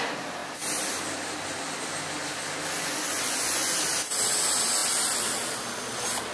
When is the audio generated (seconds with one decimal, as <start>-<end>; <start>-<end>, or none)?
2.8-3.8